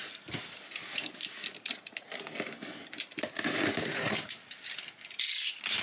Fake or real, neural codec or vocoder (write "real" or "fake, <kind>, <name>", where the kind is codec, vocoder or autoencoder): fake, vocoder, BigVGAN v2